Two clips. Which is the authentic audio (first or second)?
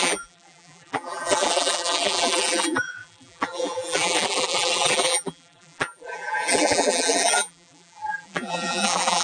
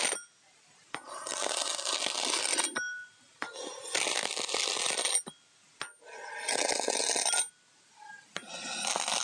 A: second